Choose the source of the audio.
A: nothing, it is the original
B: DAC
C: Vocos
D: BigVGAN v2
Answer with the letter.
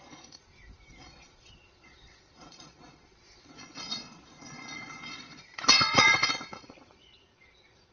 C